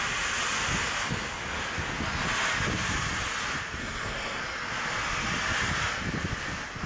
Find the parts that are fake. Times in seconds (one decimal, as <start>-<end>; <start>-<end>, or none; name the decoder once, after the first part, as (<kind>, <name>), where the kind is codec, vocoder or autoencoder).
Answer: 3.8-4.4 (codec, SNAC)